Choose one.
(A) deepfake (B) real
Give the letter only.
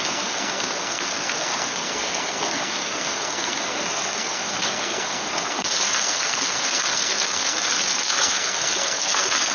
A